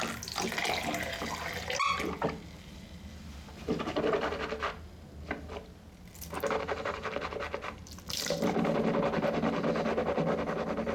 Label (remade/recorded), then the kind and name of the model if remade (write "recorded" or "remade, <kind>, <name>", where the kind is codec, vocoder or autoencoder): recorded